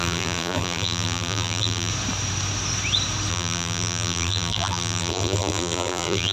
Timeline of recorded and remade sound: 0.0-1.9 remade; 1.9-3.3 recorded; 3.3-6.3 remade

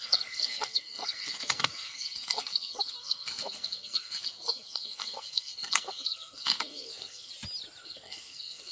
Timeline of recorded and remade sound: 0.0-7.3 remade; 7.3-7.8 recorded; 7.8-8.7 remade

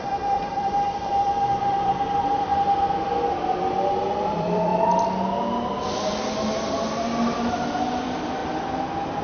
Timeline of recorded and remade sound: 0.0-2.5 remade; 2.5-4.2 recorded; 4.2-4.7 remade; 4.7-8.0 recorded; 8.0-8.4 remade; 8.4-9.2 recorded